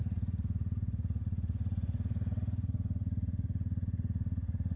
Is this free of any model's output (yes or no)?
no